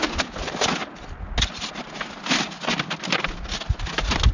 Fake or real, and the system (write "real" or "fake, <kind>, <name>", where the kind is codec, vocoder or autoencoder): real